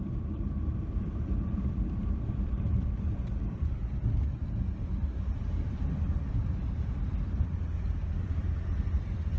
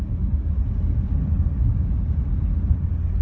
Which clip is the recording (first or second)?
second